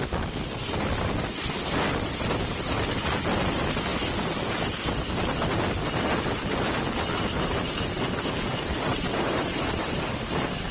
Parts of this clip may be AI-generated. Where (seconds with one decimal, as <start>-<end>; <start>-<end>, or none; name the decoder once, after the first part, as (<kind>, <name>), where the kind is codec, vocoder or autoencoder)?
8.9-10.7 (vocoder, BigVGAN v2)

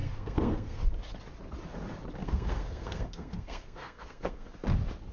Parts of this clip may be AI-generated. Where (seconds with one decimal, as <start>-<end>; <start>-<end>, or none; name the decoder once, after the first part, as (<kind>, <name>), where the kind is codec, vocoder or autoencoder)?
0.0-0.9 (codec, SNAC); 2.2-4.5

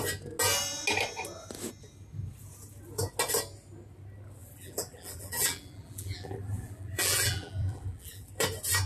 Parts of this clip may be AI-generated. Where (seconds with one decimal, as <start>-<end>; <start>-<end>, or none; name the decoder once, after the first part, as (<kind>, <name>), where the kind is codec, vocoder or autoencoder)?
4.4-8.3 (vocoder, BigVGAN v2)